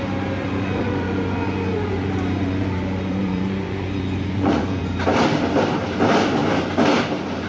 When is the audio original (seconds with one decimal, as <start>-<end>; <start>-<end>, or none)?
0.0-0.4; 4.8-7.5

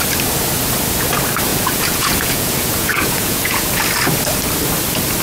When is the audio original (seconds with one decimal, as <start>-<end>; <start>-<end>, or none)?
0.0-1.5; 3.8-5.2